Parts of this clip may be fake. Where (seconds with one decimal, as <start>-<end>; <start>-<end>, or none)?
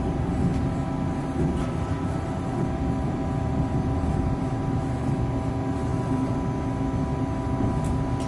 0.5-5.5